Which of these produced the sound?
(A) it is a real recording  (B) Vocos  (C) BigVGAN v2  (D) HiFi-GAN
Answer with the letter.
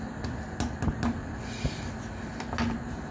A